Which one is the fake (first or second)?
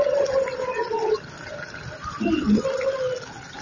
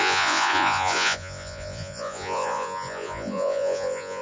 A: second